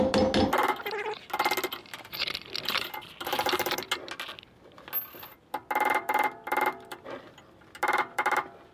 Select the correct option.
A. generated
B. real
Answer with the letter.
B